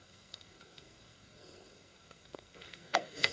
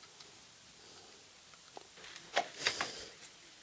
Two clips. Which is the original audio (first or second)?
second